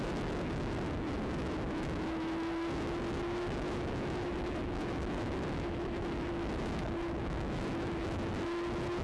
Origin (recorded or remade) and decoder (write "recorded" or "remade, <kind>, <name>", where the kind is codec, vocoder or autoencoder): remade, autoencoder, DAC-VAE